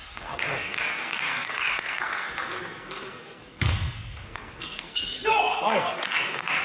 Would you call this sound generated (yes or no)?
yes